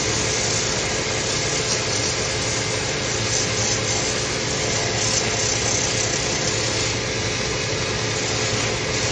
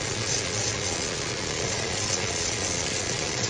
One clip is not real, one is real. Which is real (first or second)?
first